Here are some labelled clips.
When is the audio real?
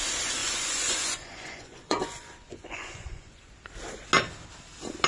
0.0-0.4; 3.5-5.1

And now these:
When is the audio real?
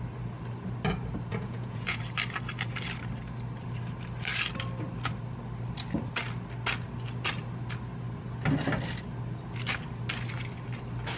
0.0-1.3; 2.0-11.2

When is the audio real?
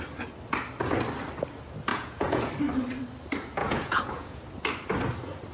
0.0-1.9; 2.5-3.6; 4.4-5.5